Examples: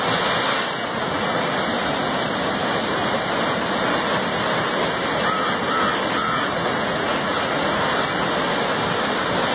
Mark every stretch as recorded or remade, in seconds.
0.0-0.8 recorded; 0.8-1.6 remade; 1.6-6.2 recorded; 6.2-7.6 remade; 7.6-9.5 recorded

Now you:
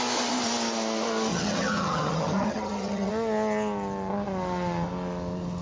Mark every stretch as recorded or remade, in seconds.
0.0-1.3 recorded; 1.3-3.1 remade; 3.1-5.6 recorded

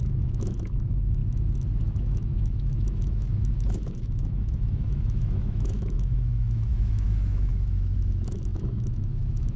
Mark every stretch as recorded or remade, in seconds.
0.0-1.2 remade; 1.2-1.9 recorded; 1.9-9.6 remade

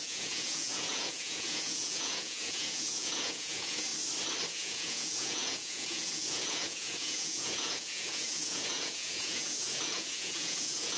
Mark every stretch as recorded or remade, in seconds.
0.0-3.9 remade; 3.9-4.5 recorded; 4.5-11.0 remade

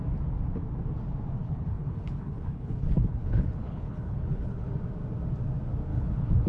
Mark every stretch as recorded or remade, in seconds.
0.0-1.4 recorded; 1.4-4.7 remade; 4.7-5.9 recorded; 5.9-6.5 remade

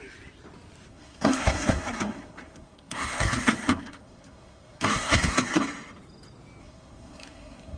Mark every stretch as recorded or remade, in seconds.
0.0-0.9 recorded; 0.9-5.6 remade; 5.6-6.6 recorded; 6.6-7.8 remade

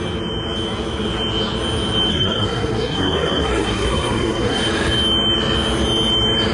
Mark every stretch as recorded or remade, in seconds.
0.0-2.1 recorded; 2.1-4.6 remade; 4.6-6.5 recorded

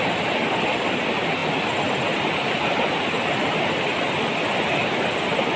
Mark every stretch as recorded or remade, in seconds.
0.0-5.6 recorded